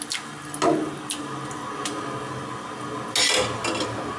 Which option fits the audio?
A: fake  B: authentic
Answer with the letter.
B